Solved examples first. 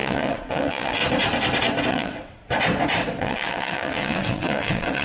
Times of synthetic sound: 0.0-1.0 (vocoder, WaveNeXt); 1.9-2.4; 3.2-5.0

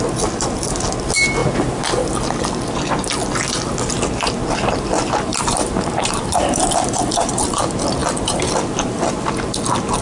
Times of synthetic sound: 5.3-7.6 (vocoder, BigVGAN v2)

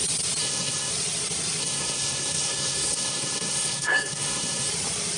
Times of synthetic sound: 0.4-0.9 (codec, SNAC); 1.6-4.7

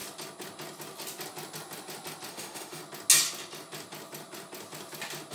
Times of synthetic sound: 2.3-2.8 (autoencoder, DAC-VAE)

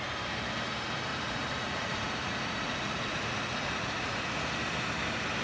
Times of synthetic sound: 1.1-4.3 (vocoder, Vocos)